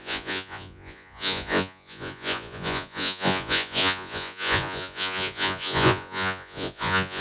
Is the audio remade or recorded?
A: remade